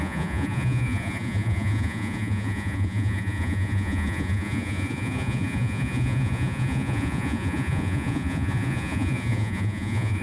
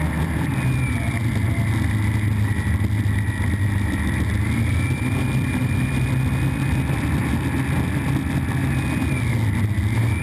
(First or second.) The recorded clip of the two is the second